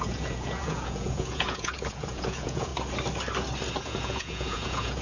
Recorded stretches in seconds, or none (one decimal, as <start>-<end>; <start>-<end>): 2.7-3.8